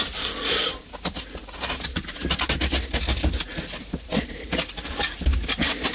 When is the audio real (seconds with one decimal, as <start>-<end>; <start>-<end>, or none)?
0.0-5.9